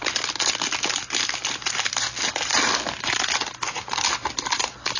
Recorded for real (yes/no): yes